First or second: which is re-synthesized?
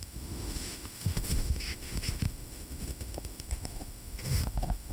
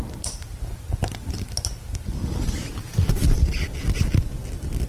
first